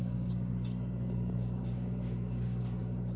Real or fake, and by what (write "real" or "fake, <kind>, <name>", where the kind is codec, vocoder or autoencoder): fake, codec, DAC